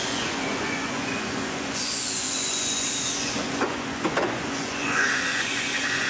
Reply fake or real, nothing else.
fake